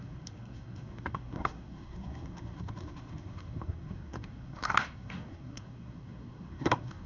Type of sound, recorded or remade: remade